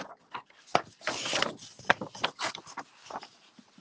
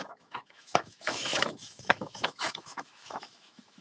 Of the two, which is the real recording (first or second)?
first